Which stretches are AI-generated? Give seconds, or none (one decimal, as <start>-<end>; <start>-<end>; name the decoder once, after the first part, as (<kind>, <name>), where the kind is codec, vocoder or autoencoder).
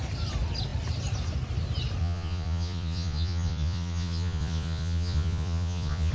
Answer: 2.0-6.1 (vocoder, Vocos)